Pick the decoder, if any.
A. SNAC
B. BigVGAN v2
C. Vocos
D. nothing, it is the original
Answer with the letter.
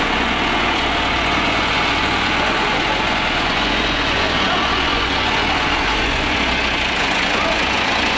C